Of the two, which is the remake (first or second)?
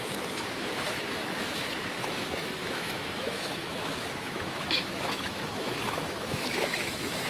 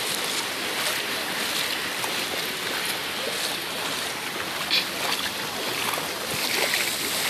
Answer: first